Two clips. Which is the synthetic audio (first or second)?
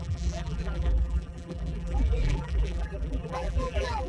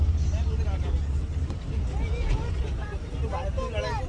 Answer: first